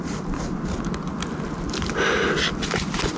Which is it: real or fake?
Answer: real